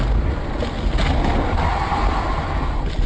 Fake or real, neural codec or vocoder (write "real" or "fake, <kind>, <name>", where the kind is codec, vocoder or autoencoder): real